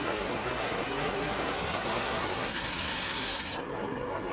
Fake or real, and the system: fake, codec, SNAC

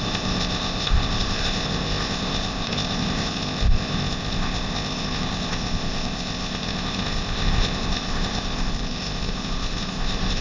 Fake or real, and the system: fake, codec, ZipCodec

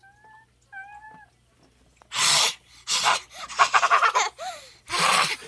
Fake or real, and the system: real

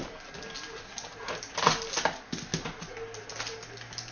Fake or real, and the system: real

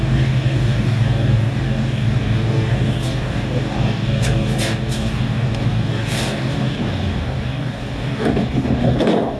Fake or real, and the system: fake, codec, DAC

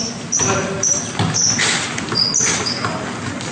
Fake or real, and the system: real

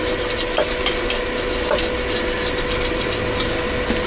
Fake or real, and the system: real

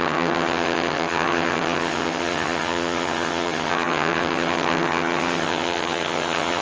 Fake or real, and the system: fake, vocoder, HiFi-GAN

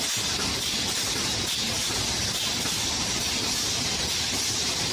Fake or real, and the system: real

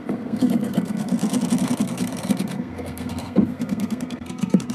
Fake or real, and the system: fake, codec, SNAC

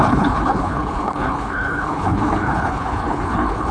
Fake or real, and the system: fake, codec, HILCodec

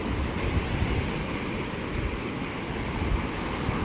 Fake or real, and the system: real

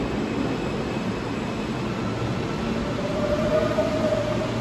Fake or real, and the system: real